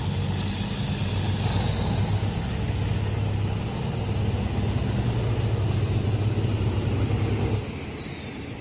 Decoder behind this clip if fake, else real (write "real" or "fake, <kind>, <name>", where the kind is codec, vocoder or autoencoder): real